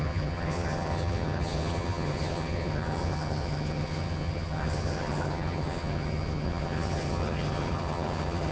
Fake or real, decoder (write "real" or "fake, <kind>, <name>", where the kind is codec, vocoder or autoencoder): fake, vocoder, HiFi-GAN